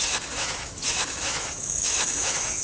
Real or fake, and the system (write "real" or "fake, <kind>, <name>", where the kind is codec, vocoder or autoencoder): fake, autoencoder, DAC-VAE